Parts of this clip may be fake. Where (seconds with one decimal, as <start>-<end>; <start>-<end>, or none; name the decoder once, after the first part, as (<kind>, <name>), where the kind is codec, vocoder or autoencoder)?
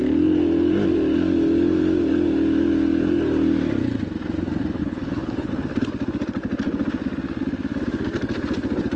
4.8-5.5 (codec, HILCodec)